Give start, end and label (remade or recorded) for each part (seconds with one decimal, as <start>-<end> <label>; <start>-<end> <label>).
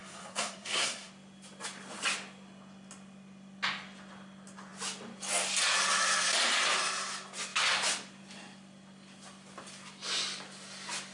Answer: 0.0-1.1 remade; 1.1-11.1 recorded